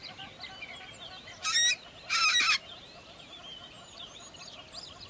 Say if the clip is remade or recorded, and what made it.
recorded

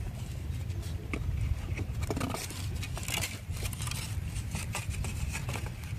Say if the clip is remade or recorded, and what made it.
remade, vocoder, BigVGAN v2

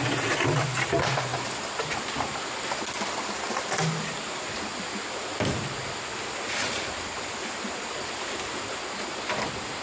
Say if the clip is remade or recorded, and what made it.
recorded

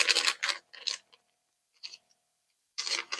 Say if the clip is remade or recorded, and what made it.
remade, vocoder, BigVGAN v2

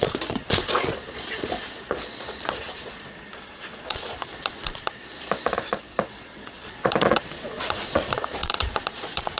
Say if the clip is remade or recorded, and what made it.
remade, vocoder, Vocos